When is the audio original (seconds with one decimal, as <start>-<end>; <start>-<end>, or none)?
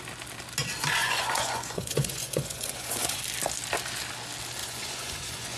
0.0-1.0; 3.2-4.6